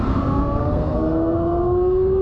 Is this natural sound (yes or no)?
no